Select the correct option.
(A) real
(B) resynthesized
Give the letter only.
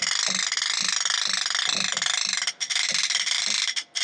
A